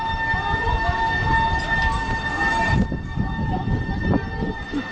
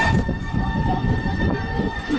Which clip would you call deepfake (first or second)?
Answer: second